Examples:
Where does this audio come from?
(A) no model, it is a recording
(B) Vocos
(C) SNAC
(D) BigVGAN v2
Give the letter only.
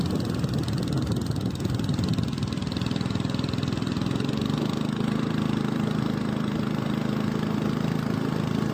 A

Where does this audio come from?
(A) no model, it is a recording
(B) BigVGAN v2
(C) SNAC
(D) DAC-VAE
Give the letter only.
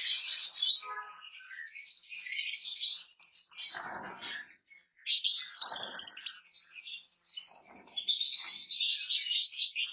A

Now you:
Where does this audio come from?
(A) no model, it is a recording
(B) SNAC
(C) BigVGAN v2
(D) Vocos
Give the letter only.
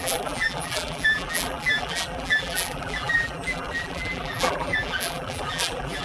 C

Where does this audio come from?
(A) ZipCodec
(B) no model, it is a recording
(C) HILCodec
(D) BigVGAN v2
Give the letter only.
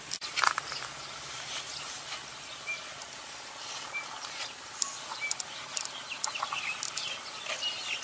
B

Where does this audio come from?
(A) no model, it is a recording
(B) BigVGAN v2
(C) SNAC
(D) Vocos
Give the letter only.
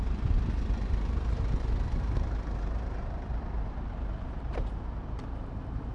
B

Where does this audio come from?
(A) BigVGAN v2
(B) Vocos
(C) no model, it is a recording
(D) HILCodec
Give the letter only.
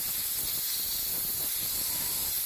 C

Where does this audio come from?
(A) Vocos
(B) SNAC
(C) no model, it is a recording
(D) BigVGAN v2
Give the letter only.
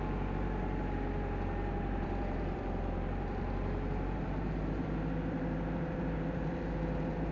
D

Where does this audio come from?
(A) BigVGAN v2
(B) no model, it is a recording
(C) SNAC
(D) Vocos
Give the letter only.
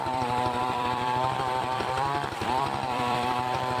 A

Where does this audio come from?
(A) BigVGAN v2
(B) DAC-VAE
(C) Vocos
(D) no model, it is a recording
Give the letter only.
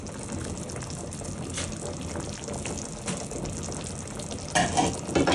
D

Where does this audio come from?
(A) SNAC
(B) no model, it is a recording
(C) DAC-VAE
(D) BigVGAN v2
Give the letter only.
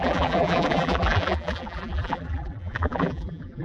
D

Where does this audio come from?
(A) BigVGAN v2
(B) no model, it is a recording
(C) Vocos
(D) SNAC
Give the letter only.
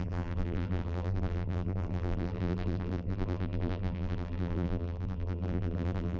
A